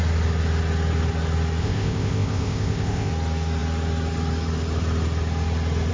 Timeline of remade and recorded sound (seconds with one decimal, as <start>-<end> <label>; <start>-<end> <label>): 0.0-1.6 recorded; 1.6-3.1 remade; 3.1-5.9 recorded